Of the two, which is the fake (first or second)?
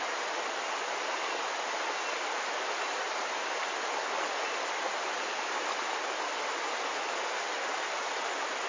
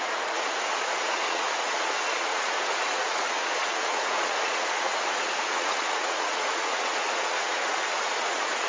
second